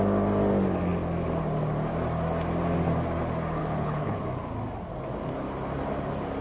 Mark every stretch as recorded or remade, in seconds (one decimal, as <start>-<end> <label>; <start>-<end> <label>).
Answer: 0.0-3.6 recorded; 3.6-4.2 remade; 4.2-6.4 recorded